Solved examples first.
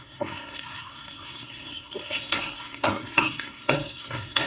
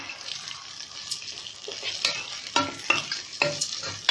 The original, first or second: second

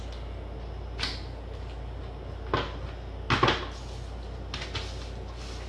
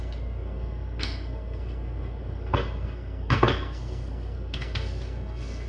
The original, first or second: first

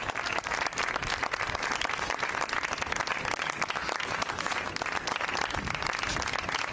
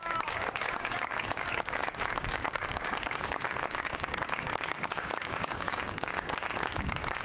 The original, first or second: first